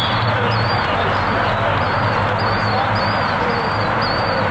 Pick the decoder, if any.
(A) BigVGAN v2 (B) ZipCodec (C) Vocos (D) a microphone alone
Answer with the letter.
D